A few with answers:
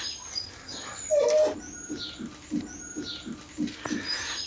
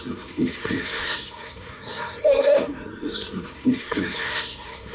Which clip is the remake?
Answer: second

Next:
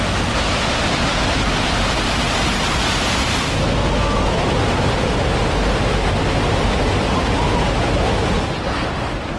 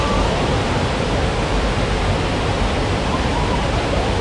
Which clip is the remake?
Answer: second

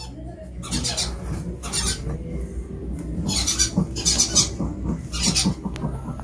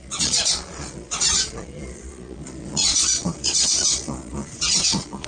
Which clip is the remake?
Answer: second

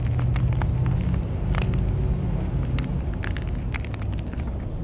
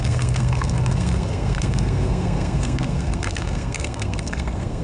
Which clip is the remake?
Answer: second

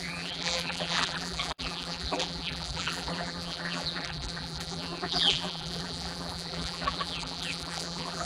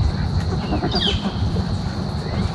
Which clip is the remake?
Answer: first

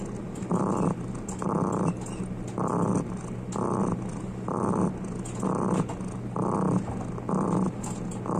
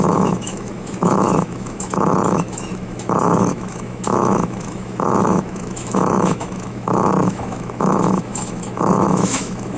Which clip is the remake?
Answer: second